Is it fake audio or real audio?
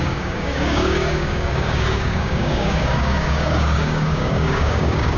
fake